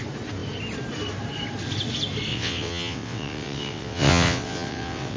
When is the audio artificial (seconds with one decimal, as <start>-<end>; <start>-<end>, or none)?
2.3-5.2